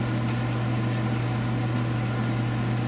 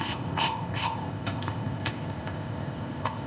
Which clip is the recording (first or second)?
first